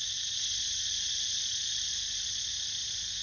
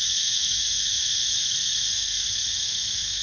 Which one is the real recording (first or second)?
first